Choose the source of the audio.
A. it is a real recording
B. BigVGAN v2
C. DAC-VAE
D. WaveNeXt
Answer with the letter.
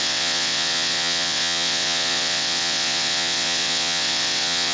D